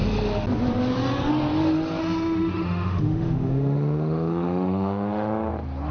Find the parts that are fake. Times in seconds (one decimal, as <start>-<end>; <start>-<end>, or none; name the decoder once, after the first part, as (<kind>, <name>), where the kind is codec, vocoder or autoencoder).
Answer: 2.0-5.5 (autoencoder, DAC-VAE)